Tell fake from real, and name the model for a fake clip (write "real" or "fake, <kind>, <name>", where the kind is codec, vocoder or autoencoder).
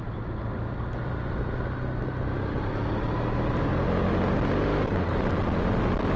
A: real